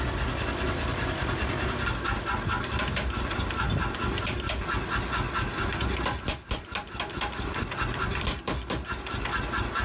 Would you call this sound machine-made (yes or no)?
no